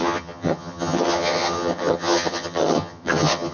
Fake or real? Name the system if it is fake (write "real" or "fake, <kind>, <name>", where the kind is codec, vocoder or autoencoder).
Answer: fake, vocoder, HiFi-GAN